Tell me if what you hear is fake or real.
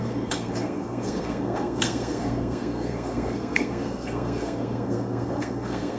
fake